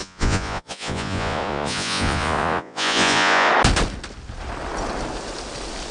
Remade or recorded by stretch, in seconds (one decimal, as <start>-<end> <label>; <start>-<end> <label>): 0.0-3.5 remade; 3.5-5.9 recorded